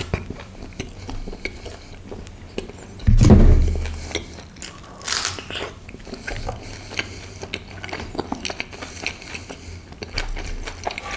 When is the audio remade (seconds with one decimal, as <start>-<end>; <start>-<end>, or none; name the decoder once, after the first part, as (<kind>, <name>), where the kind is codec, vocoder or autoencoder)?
none